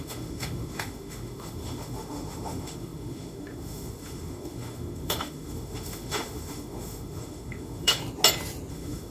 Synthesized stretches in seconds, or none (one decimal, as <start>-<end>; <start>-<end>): 0.0-8.0; 8.7-9.1

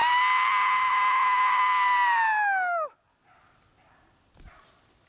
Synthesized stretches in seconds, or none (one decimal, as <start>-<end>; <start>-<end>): none

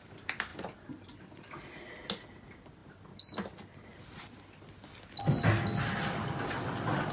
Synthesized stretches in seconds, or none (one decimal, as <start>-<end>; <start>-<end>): none

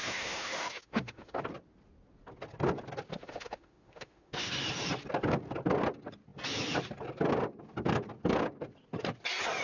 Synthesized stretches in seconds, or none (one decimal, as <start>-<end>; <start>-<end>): 0.0-1.4; 3.1-4.5